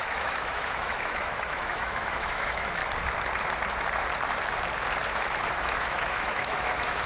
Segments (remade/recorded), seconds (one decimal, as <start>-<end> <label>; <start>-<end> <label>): 0.0-2.8 remade; 2.8-5.5 recorded; 5.5-7.1 remade